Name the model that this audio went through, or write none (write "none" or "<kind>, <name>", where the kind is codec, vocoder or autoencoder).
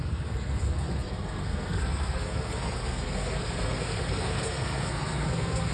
codec, SNAC